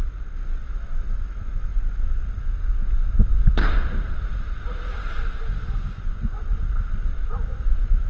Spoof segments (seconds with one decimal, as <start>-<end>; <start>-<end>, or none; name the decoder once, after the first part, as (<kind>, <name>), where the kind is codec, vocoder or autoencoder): 5.6-6.4 (vocoder, Vocos)